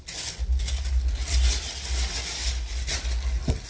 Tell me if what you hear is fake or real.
real